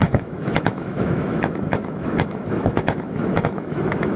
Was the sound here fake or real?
fake